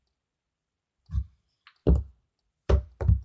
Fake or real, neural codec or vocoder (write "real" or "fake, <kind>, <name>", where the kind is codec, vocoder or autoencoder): real